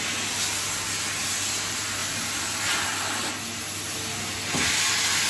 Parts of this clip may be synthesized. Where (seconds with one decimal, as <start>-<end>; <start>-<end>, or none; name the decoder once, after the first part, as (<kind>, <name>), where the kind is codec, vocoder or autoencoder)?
none